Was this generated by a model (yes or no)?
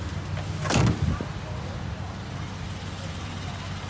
no